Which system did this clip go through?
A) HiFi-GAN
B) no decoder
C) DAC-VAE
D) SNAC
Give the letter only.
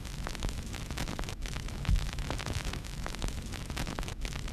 C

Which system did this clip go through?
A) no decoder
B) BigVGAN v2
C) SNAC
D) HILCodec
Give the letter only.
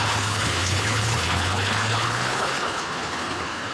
D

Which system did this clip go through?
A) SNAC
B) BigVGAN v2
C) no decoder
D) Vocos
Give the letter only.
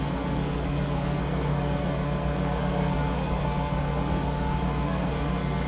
A